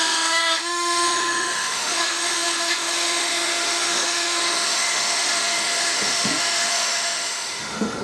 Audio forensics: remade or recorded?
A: remade